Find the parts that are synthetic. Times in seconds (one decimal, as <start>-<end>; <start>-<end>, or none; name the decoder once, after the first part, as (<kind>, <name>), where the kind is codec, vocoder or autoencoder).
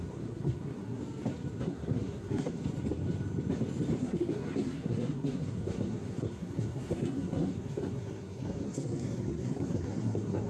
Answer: 0.0-1.0 (codec, SNAC); 1.6-2.6; 4.0-10.5